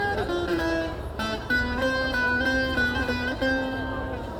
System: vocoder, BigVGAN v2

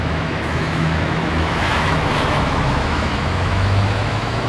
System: autoencoder, DAC-VAE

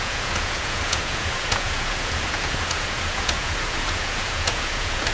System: vocoder, Vocos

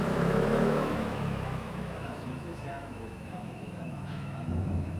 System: autoencoder, DAC-VAE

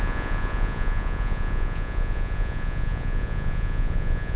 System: vocoder, Vocos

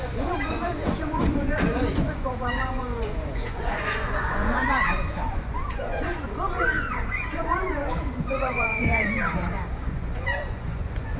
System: vocoder, Vocos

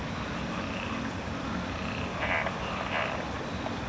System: none